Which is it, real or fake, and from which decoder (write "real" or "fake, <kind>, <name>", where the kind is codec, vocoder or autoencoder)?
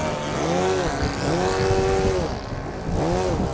real